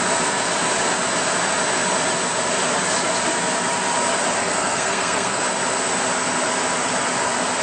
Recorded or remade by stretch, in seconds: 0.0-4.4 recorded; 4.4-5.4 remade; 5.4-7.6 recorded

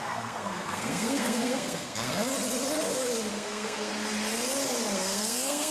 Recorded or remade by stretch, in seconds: 0.0-2.3 remade; 2.3-3.3 recorded; 3.3-3.9 remade; 3.9-4.9 recorded; 4.9-5.7 remade

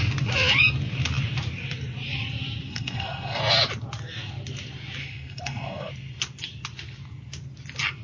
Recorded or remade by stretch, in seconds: 0.0-2.7 recorded; 2.7-3.4 remade; 3.4-5.0 recorded; 5.0-5.9 remade; 5.9-8.0 recorded

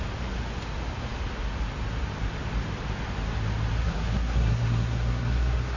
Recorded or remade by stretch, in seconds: 0.0-3.8 recorded; 3.8-5.8 remade

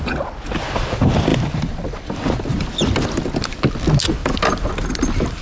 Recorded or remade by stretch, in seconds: 0.0-5.4 recorded

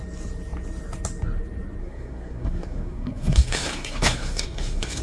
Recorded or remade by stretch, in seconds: 0.0-1.8 recorded; 1.8-5.0 remade